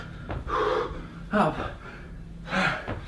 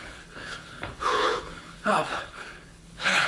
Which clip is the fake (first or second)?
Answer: second